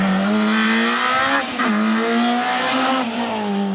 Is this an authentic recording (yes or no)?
yes